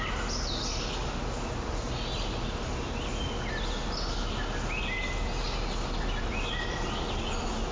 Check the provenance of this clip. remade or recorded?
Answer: recorded